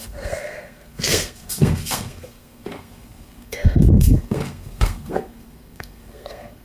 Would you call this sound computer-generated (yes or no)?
yes